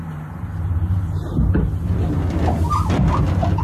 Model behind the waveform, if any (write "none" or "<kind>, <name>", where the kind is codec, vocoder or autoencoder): none